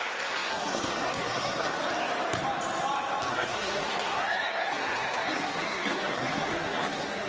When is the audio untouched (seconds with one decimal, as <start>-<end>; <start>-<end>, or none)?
1.8-3.3